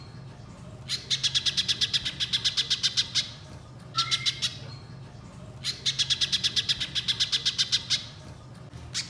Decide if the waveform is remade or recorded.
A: recorded